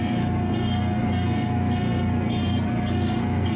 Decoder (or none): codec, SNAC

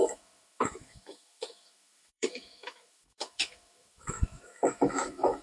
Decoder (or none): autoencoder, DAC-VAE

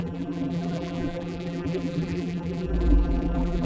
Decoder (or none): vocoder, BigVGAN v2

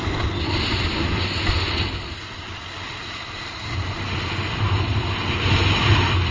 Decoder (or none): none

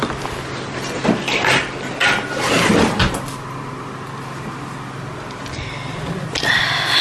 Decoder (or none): none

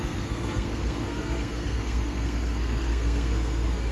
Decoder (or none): codec, SNAC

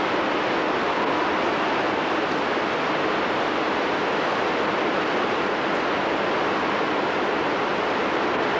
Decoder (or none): none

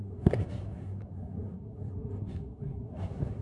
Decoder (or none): codec, SNAC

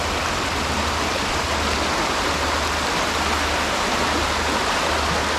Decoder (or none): none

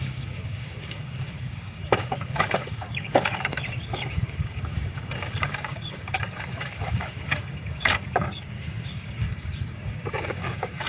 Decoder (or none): codec, DAC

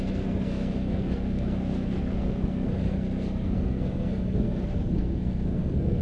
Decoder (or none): codec, SNAC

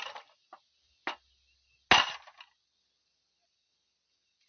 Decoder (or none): none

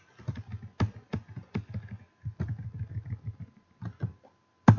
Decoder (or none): none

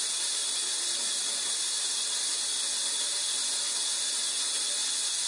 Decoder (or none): none